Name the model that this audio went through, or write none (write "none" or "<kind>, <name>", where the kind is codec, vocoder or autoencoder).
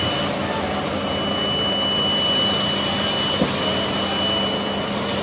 none